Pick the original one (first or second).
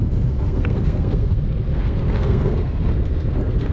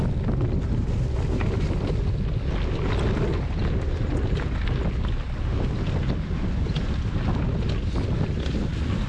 second